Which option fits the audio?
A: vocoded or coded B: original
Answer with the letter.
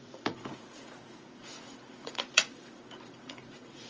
A